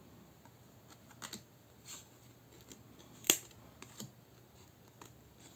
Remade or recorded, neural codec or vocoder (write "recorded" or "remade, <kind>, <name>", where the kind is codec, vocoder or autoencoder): recorded